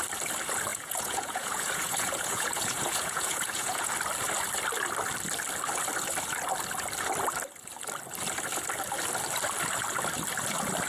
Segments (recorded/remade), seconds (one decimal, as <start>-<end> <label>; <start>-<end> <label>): 0.0-0.7 recorded; 0.7-3.9 remade; 3.9-10.9 recorded